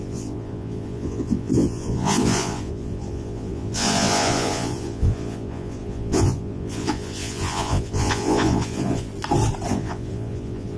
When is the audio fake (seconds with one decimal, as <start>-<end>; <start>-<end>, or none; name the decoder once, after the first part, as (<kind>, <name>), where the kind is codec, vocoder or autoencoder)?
0.0-9.1 (vocoder, Vocos); 9.7-10.8